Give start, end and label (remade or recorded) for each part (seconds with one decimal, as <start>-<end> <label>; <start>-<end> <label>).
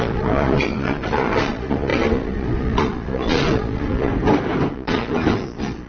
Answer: 0.0-4.1 remade; 4.1-4.7 recorded; 4.7-5.9 remade